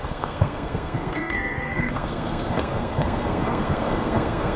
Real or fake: fake